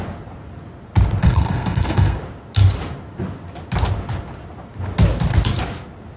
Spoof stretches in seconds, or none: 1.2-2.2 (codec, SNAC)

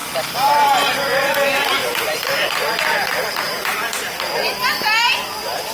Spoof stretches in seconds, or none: 0.0-0.9 (vocoder, BigVGAN v2); 1.8-4.0

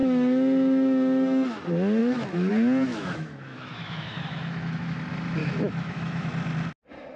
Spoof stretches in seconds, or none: 0.0-1.6 (autoencoder, DAC-VAE); 2.0-2.5; 2.9-5.0; 5.4-6.3

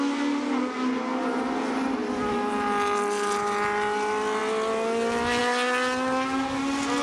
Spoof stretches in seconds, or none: none

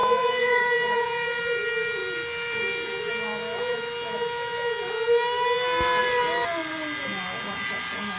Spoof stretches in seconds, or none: 0.0-1.4 (vocoder, Vocos)

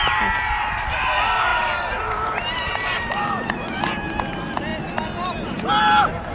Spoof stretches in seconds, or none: 1.5-3.8 (vocoder, BigVGAN v2)

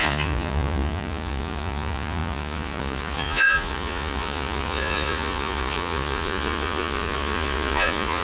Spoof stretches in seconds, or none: 0.0-8.2 (vocoder, Vocos)